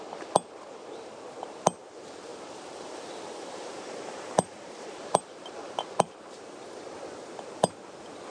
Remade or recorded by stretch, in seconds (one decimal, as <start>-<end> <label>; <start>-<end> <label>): 0.0-2.3 recorded; 2.3-6.2 remade; 6.2-8.3 recorded